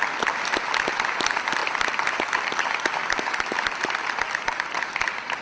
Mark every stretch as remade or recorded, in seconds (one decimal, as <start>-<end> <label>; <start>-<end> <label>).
0.0-1.6 recorded; 1.6-4.8 remade; 4.8-5.4 recorded